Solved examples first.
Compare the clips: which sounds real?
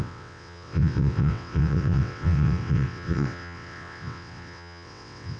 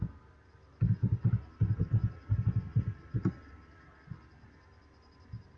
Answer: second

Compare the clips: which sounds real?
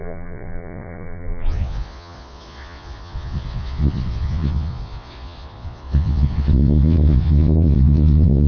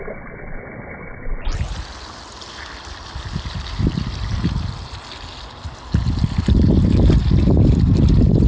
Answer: second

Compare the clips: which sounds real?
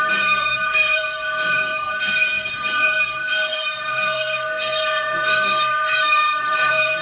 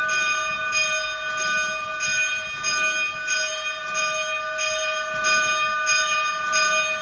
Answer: second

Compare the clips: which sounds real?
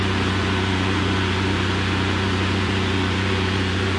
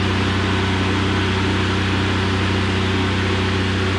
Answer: second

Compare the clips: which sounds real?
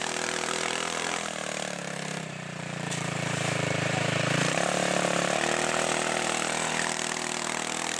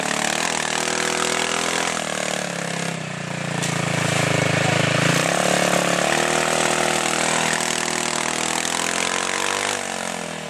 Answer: second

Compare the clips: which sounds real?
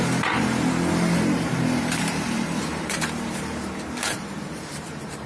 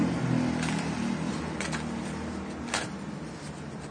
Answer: second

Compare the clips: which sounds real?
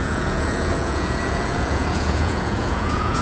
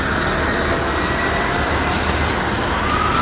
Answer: second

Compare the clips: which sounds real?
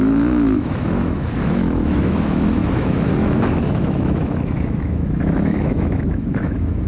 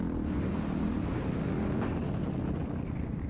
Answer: second